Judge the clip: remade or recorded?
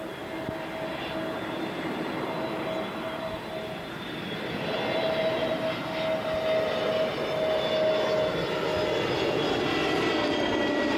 recorded